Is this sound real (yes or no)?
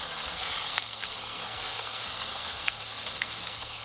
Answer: no